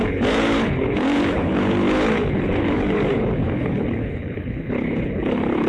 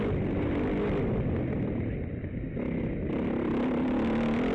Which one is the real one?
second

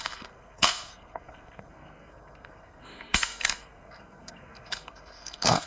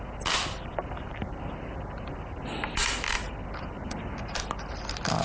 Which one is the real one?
second